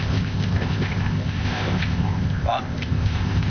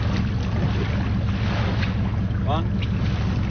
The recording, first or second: second